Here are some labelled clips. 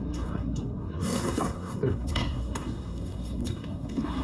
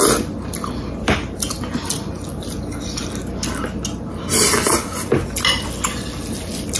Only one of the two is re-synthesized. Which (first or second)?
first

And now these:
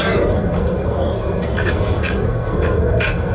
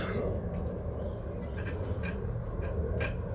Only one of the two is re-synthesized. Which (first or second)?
first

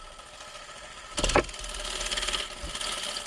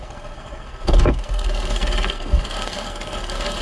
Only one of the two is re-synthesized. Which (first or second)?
second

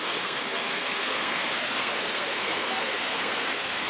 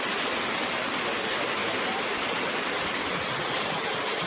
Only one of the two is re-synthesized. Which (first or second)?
first